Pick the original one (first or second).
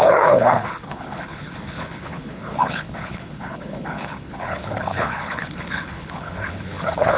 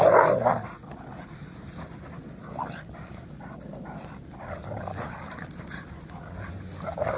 second